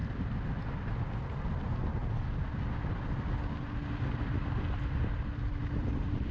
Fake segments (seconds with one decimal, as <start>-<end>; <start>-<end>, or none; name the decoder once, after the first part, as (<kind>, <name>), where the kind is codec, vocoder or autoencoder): none